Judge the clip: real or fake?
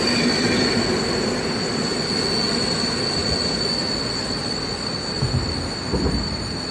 real